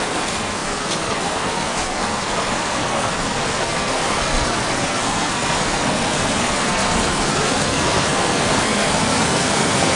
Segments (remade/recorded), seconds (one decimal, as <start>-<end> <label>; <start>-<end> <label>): 0.0-10.0 remade